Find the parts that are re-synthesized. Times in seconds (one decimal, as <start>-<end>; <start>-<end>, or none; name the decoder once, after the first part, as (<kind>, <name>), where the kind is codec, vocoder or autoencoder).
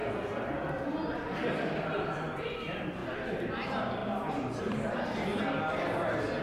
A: 0.0-4.0 (vocoder, BigVGAN v2); 4.6-5.3